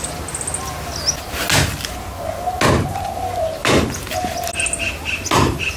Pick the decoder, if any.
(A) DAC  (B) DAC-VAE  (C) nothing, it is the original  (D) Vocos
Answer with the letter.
C